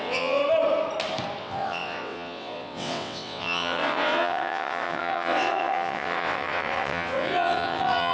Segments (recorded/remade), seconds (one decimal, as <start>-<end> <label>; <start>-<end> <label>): 0.0-0.4 remade; 0.4-1.4 recorded; 1.4-8.1 remade